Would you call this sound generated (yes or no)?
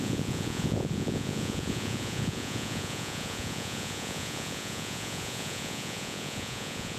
yes